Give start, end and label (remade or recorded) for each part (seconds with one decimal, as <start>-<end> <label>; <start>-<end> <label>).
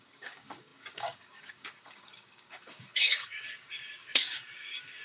0.0-5.0 remade